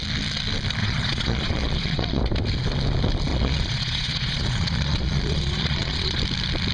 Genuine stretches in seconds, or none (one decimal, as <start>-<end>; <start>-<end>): 0.0-0.8; 2.2-3.3; 6.2-6.7